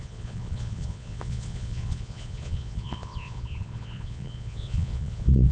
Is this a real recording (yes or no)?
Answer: no